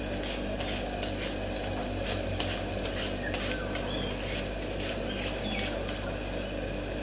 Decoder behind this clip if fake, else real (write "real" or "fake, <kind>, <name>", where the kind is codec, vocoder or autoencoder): real